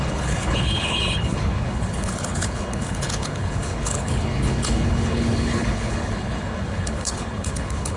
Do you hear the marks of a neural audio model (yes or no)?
yes